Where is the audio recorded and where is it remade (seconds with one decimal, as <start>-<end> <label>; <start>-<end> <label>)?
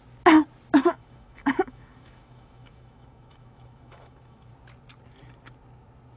0.0-0.8 recorded; 0.8-4.5 remade; 4.5-6.2 recorded